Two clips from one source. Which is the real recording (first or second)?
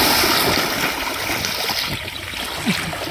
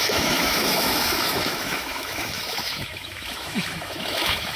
first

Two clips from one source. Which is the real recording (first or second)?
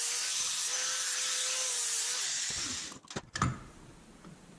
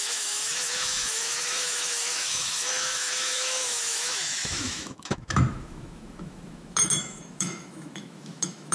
first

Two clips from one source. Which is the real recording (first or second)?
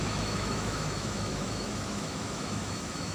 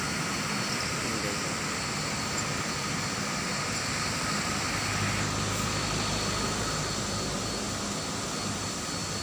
second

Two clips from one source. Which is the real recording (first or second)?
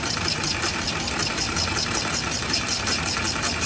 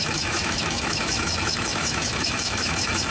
first